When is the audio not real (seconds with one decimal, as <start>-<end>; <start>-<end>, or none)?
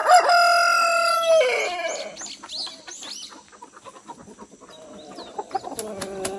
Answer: none